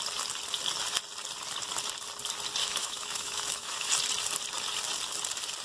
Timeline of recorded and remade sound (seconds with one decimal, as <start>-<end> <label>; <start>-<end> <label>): 0.0-2.6 recorded; 2.6-3.9 remade; 3.9-5.6 recorded